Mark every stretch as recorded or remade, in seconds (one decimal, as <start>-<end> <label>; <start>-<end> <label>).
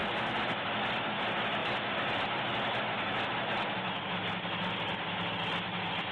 0.0-6.1 recorded